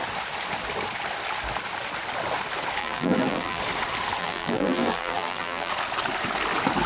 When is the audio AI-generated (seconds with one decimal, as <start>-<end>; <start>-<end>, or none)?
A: 2.8-3.6; 4.2-5.7